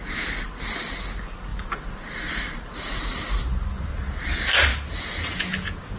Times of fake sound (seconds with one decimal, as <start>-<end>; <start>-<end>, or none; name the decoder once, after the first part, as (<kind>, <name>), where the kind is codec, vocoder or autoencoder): 4.7-6.0 (vocoder, Vocos)